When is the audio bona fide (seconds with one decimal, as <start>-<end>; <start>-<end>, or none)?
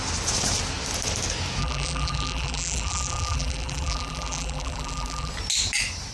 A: 0.0-1.6; 5.3-6.1